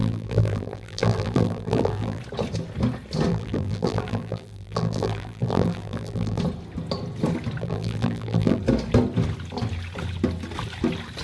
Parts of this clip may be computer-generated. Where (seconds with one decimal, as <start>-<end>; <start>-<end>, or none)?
0.0-2.2; 3.3-6.4; 7.6-8.6